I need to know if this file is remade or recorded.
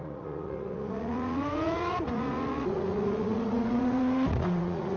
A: remade